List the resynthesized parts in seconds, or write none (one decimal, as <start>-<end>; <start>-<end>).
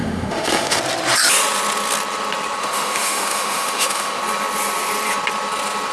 0.0-0.8; 2.6-4.2